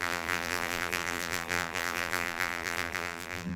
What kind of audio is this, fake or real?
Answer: fake